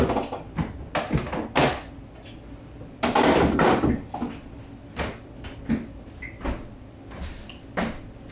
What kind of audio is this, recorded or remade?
recorded